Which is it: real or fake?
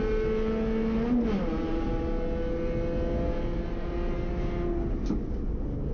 real